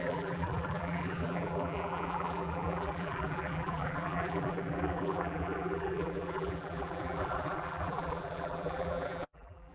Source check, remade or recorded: remade